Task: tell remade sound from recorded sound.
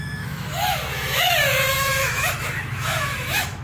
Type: remade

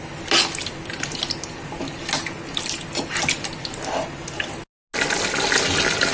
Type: recorded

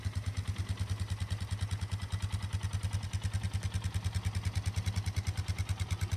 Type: recorded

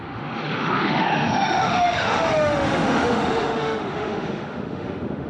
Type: remade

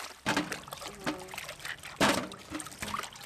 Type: recorded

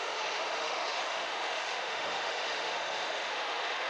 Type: remade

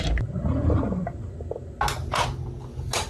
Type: recorded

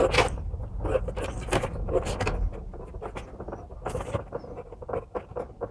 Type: recorded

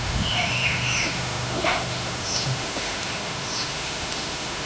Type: remade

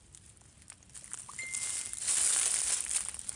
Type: recorded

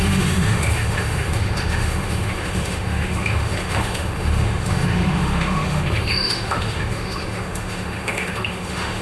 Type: remade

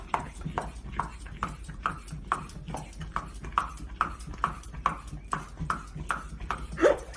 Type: recorded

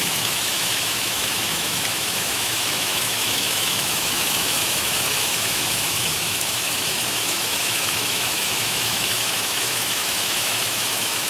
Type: remade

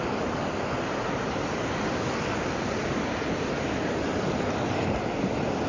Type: recorded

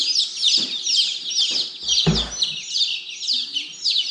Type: recorded